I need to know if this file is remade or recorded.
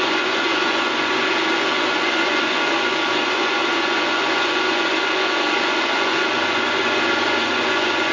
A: remade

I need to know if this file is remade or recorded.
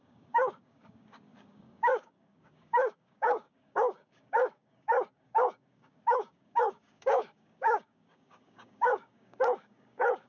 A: remade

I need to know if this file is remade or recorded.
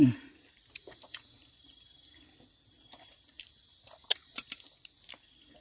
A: recorded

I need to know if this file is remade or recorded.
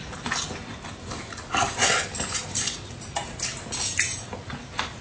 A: recorded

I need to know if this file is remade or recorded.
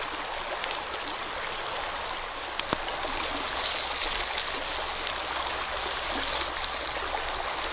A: recorded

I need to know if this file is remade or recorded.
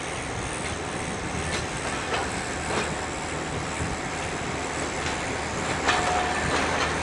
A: recorded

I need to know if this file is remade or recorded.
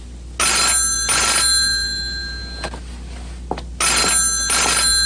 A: recorded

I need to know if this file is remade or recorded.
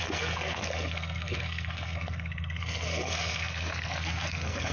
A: remade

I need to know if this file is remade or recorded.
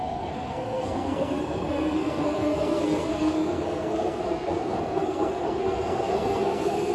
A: remade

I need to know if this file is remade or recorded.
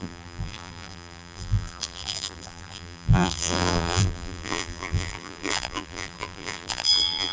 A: remade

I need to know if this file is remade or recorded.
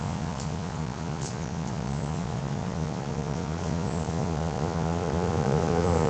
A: remade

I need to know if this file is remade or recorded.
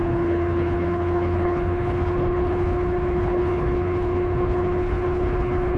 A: remade